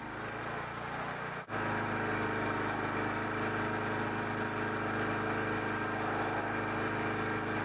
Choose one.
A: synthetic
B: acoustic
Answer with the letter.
B